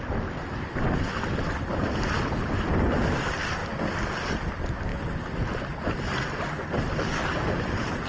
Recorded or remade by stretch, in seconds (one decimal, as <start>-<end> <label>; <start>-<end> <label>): 0.0-8.1 recorded